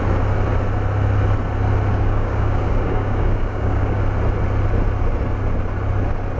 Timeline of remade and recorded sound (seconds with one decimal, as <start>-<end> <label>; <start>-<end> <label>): 0.0-1.9 recorded; 1.9-4.0 remade; 4.0-6.4 recorded